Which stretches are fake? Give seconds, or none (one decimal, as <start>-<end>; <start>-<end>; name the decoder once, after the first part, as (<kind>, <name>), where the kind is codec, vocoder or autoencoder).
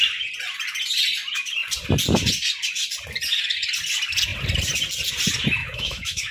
5.6-6.3 (autoencoder, DAC-VAE)